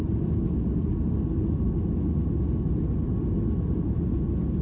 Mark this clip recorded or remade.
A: recorded